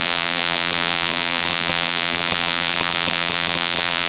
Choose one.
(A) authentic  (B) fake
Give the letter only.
B